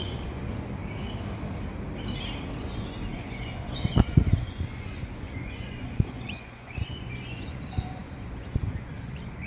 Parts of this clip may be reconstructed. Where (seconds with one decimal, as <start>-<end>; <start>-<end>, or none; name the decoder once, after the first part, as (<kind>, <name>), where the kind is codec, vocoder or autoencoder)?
0.0-0.8 (vocoder, Vocos); 2.6-9.5